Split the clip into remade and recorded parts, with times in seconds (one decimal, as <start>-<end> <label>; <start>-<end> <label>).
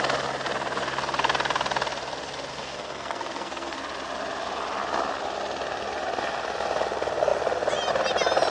0.0-2.5 recorded; 2.5-3.8 remade; 3.8-8.5 recorded